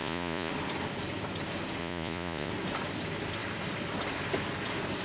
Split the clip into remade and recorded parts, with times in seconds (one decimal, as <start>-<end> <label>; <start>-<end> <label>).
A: 0.0-0.5 remade; 0.5-1.8 recorded; 1.8-2.5 remade; 2.5-5.0 recorded